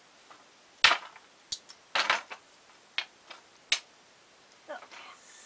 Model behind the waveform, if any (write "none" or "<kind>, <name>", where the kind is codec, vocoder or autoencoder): none